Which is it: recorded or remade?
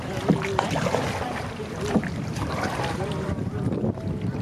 remade